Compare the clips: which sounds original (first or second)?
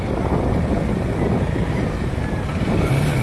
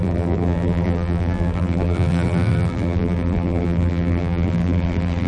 first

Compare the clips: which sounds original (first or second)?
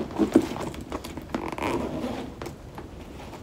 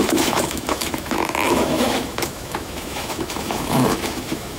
first